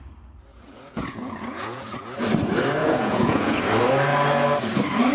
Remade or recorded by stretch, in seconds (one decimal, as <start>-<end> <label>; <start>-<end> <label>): 0.0-0.5 recorded; 0.5-1.9 remade; 1.9-2.8 recorded; 2.8-3.6 remade; 3.6-5.1 recorded